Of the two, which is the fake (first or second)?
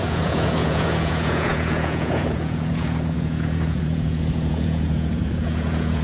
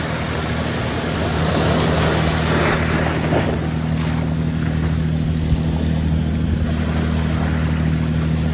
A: first